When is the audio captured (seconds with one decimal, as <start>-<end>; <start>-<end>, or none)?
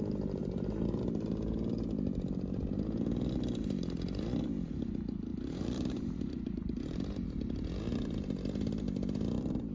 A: 0.0-0.4; 1.0-5.3; 6.8-9.7